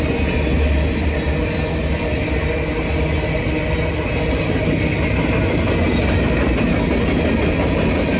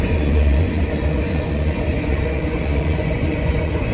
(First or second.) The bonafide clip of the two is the first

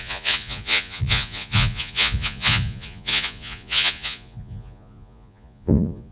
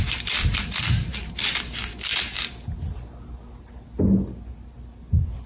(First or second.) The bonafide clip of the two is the second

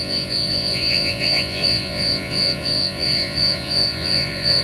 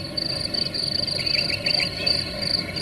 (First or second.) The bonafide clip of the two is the second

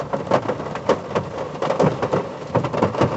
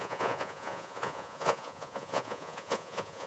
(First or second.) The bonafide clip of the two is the first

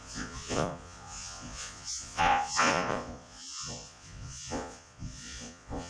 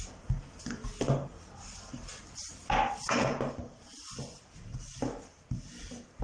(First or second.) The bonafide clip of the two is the second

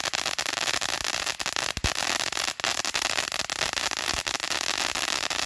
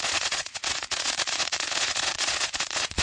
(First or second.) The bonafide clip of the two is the first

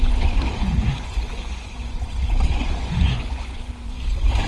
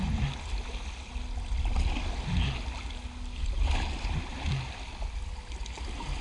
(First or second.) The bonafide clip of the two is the second